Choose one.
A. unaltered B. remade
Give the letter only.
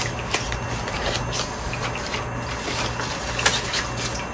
A